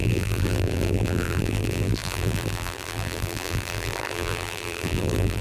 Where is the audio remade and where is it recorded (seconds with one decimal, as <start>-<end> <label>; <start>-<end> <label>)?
0.0-5.4 remade